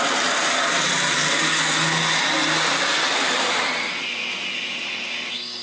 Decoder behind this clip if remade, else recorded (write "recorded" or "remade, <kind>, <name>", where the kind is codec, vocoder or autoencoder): recorded